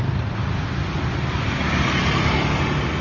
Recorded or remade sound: recorded